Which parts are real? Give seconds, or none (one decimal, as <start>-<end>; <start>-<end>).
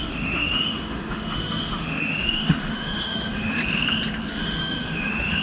3.6-4.3